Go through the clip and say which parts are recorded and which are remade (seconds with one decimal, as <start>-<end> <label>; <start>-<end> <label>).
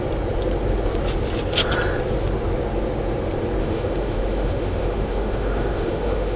0.0-3.6 recorded; 3.6-6.4 remade